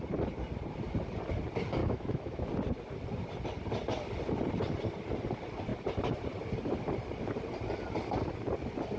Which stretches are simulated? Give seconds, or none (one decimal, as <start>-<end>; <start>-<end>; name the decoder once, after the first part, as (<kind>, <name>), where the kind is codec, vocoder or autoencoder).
1.8-2.5 (autoencoder, DAC-VAE)